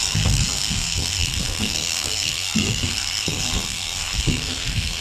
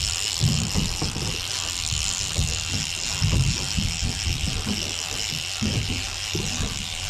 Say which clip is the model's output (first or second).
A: first